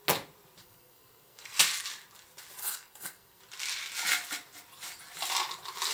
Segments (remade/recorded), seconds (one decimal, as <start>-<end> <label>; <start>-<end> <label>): 0.0-0.6 recorded; 0.6-1.6 remade; 1.6-2.6 recorded; 2.6-3.4 remade; 3.4-5.9 recorded